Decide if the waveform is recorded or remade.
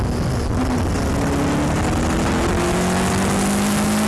recorded